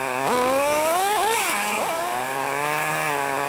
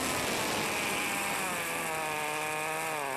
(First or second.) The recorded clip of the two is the second